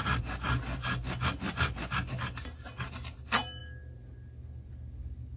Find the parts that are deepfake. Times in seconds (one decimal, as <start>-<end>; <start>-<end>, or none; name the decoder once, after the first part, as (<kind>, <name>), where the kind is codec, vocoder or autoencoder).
none